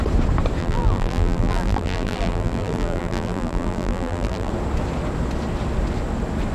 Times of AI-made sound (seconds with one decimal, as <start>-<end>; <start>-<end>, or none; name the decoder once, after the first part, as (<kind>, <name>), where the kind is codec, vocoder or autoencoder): 0.6-4.5 (vocoder, BigVGAN v2)